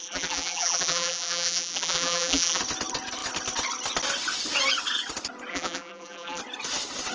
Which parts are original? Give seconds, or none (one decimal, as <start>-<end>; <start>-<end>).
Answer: 2.6-5.5; 6.4-7.1